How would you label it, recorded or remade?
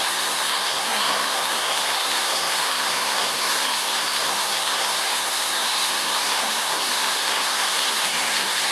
remade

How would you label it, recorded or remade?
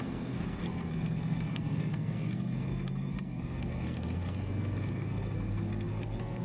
remade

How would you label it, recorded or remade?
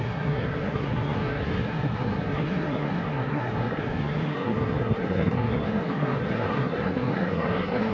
remade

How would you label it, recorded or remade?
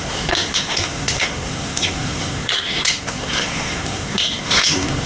remade